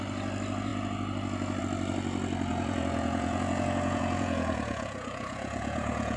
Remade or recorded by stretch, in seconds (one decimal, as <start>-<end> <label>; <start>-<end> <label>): 0.0-2.5 recorded; 2.5-6.2 remade